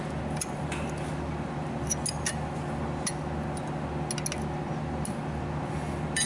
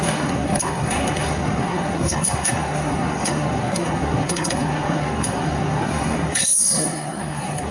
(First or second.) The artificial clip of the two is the second